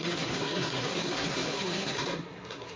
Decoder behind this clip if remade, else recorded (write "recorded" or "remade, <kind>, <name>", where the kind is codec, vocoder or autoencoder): remade, codec, SNAC